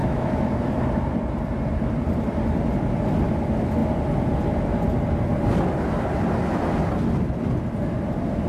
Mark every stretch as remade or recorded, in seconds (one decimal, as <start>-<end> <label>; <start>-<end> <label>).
0.0-0.5 remade; 0.5-8.5 recorded

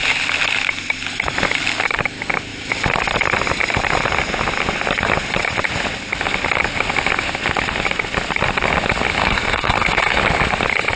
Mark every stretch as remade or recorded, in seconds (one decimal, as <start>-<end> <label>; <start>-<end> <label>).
0.0-9.2 recorded; 9.2-10.2 remade; 10.2-11.0 recorded